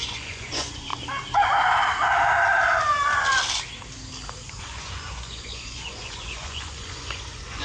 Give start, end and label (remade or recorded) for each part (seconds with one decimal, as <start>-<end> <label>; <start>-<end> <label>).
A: 0.0-0.9 remade; 0.9-4.6 recorded; 4.6-7.6 remade